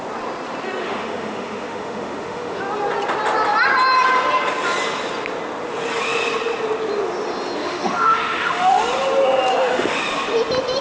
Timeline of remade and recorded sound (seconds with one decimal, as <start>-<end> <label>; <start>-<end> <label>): 0.0-0.8 recorded; 0.8-2.6 remade; 2.6-7.6 recorded; 7.6-8.8 remade; 8.8-9.5 recorded; 9.5-10.0 remade; 10.0-10.8 recorded

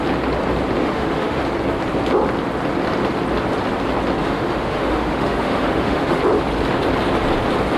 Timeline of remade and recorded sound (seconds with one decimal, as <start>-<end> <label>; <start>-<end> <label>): 0.0-0.8 recorded; 0.8-1.4 remade; 1.4-4.2 recorded; 4.2-6.2 remade; 6.2-7.8 recorded